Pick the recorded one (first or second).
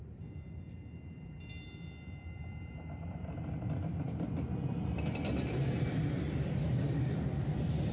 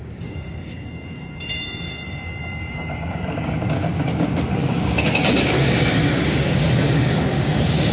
first